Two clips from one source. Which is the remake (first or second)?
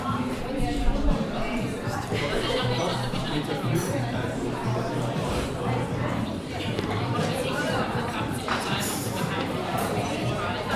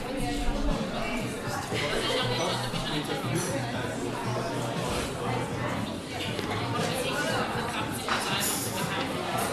first